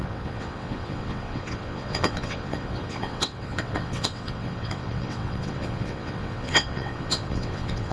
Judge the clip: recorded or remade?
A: remade